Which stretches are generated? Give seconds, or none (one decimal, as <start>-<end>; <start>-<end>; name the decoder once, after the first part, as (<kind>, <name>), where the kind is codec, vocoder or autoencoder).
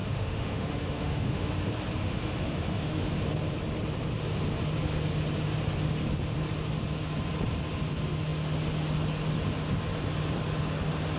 0.0-1.5 (autoencoder, DAC-VAE); 2.0-3.1